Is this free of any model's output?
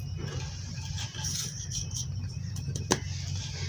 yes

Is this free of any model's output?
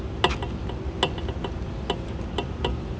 yes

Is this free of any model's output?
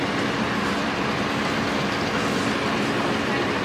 yes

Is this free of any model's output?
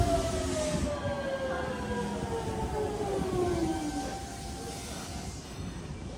yes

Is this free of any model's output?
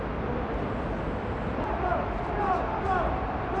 yes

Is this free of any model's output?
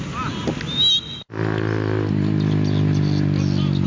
yes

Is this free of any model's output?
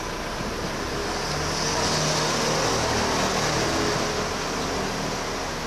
yes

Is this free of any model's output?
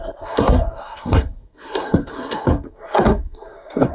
no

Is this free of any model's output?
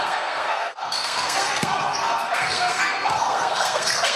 no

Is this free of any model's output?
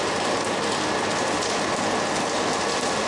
yes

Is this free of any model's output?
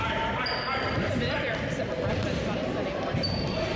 yes